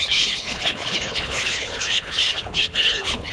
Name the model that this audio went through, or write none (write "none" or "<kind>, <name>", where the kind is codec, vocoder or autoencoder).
codec, HILCodec